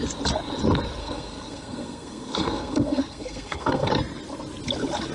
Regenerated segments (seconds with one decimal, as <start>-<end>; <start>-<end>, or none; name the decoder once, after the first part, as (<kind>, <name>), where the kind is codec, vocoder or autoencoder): 1.0-3.9 (codec, SNAC)